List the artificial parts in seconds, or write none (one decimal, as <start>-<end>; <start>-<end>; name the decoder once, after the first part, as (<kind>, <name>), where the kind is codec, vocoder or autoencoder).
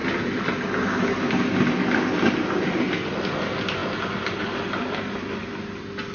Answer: none